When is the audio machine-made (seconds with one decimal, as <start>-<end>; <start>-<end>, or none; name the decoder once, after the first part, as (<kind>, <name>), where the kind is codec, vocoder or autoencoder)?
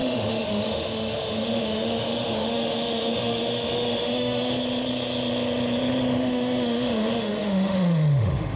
0.0-4.5 (autoencoder, DAC-VAE); 6.2-8.6